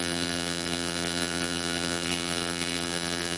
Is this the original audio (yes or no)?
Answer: no